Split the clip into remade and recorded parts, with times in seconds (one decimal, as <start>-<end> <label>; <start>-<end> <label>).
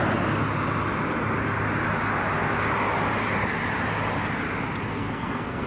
0.0-4.9 recorded; 4.9-5.7 remade